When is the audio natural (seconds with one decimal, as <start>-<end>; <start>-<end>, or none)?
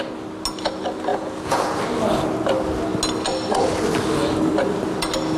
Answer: 0.0-1.1; 1.8-5.4